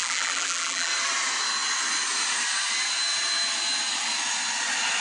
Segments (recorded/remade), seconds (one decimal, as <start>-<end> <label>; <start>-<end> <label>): 0.0-0.9 remade; 0.9-5.0 recorded